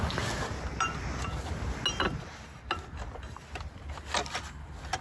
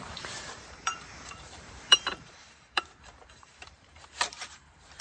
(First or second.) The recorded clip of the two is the first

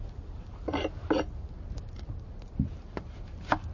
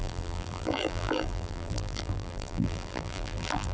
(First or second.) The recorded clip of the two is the first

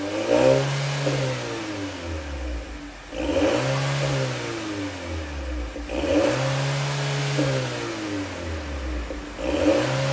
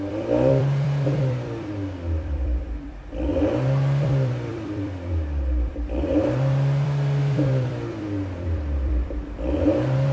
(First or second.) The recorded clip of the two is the first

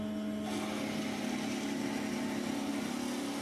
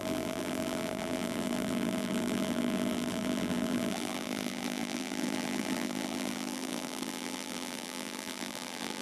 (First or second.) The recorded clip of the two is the first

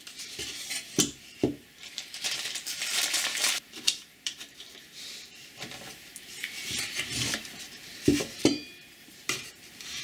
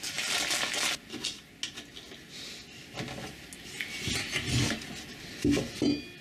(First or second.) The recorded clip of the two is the second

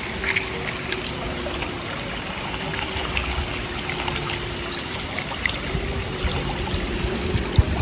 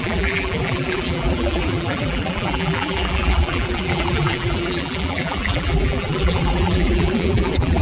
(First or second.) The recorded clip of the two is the first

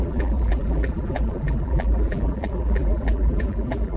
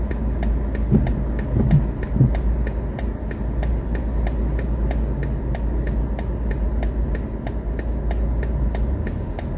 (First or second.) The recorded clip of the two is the second